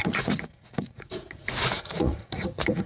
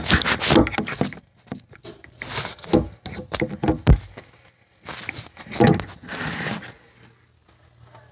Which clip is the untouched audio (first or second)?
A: second